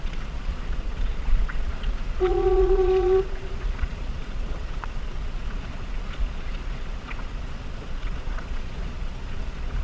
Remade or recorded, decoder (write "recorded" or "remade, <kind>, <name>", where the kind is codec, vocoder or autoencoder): remade, vocoder, Vocos